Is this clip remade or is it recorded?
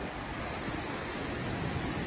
recorded